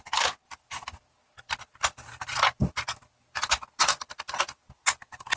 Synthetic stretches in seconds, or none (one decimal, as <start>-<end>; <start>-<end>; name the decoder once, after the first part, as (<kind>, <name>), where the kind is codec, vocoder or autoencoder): none